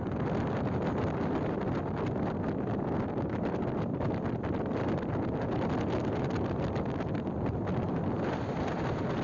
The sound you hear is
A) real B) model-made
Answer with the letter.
B